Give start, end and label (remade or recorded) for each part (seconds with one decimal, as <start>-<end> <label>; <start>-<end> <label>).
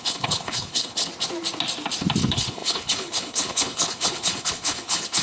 0.0-1.1 remade; 1.1-2.2 recorded; 2.2-5.2 remade